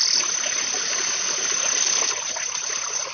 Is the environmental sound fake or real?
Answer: real